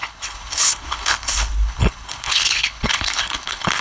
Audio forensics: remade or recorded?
remade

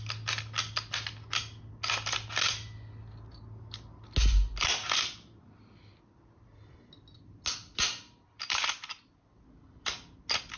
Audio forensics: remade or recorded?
recorded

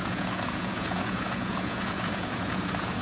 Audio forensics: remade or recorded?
remade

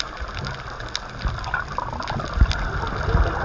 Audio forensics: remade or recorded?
recorded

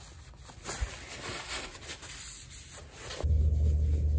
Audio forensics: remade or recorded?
recorded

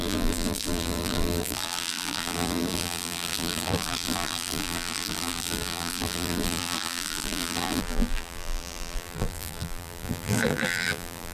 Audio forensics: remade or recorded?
remade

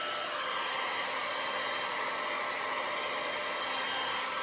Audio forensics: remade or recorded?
recorded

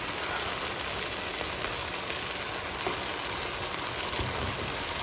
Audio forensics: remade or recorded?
recorded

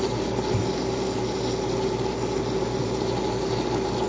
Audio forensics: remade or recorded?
recorded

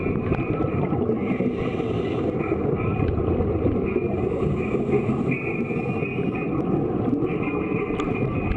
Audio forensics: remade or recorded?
recorded